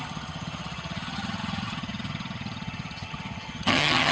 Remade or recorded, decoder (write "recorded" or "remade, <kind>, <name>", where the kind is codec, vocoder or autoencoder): remade, vocoder, HiFi-GAN